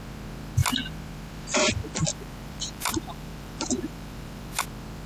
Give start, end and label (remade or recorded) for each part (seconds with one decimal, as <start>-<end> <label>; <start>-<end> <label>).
0.0-2.1 recorded; 2.1-4.6 remade; 4.6-5.1 recorded